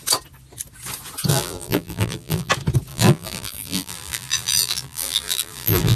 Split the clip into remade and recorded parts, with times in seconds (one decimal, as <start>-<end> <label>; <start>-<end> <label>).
0.0-1.3 recorded; 1.3-2.5 remade; 2.5-2.9 recorded; 2.9-6.0 remade